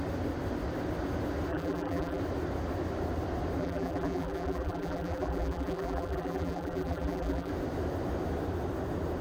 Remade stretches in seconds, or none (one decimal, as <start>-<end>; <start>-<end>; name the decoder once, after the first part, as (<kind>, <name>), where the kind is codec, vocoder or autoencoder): 1.5-2.2 (vocoder, BigVGAN v2); 3.6-7.5